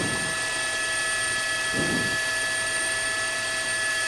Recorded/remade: recorded